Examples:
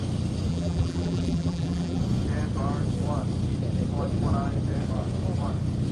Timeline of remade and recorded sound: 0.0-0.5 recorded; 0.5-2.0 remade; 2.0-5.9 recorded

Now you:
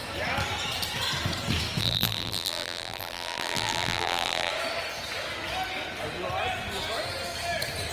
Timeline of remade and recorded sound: 0.0-1.8 recorded; 1.8-4.5 remade; 4.5-7.9 recorded

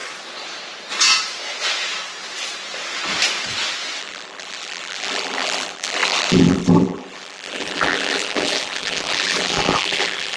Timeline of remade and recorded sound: 0.0-4.0 recorded; 4.0-10.4 remade

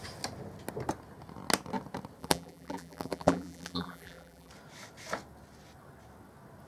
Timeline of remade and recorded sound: 0.0-2.2 recorded; 2.2-4.5 remade; 4.5-6.7 recorded

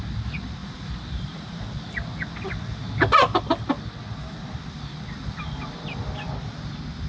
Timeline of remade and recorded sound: 0.0-0.6 recorded; 0.6-1.6 remade; 1.6-7.1 recorded

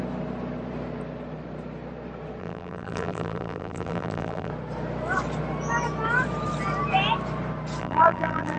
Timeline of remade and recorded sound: 0.0-2.4 recorded; 2.4-4.5 remade; 4.5-7.8 recorded; 7.8-8.6 remade

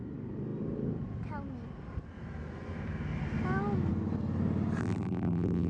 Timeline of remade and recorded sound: 0.0-4.8 recorded; 4.8-5.7 remade